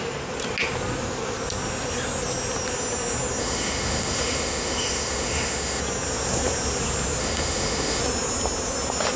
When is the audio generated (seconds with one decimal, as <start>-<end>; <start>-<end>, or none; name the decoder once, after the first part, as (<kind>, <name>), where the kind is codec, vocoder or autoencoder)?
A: 3.4-5.8 (autoencoder, DAC-VAE); 7.2-8.0